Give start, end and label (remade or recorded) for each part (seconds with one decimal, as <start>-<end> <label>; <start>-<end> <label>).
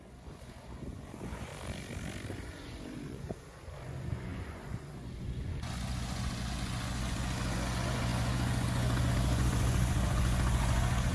0.0-1.5 remade; 1.5-2.3 recorded; 2.3-11.1 remade